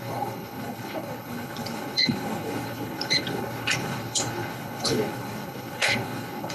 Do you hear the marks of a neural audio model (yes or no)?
yes